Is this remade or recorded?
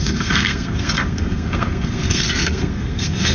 remade